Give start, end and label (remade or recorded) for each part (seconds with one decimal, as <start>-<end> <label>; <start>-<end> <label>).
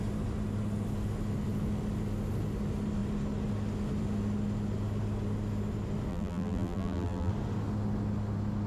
0.0-6.1 recorded; 6.1-7.3 remade; 7.3-8.7 recorded